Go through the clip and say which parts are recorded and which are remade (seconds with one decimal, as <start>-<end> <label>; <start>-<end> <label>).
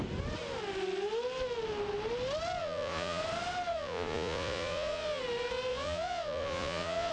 0.0-2.6 recorded; 2.6-3.2 remade; 3.2-3.7 recorded; 3.7-5.2 remade; 5.2-5.7 recorded; 5.7-7.1 remade